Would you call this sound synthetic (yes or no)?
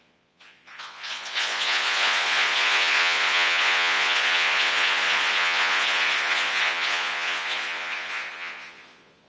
yes